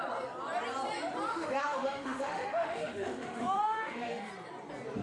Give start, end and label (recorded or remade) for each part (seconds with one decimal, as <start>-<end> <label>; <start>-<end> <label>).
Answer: 0.0-1.3 recorded; 1.3-4.3 remade; 4.3-5.0 recorded